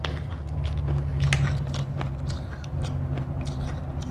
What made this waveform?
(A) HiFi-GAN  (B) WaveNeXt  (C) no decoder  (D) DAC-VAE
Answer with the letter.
C